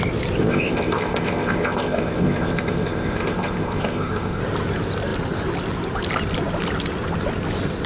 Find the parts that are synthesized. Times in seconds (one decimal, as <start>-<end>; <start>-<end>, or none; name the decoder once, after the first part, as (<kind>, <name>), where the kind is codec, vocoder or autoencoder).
0.4-4.4 (codec, ZipCodec)